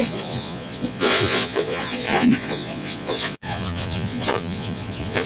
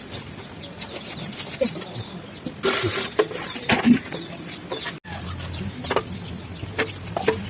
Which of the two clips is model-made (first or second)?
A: first